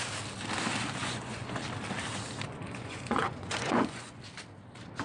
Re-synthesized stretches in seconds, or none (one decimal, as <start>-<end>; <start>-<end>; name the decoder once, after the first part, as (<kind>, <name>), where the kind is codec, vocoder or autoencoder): 1.0-1.6 (vocoder, Vocos); 2.5-4.2